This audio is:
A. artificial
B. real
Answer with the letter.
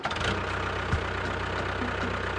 B